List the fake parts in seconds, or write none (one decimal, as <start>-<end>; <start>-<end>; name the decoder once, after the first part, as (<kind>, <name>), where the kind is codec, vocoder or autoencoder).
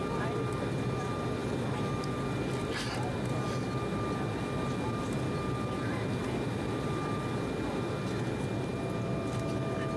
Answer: none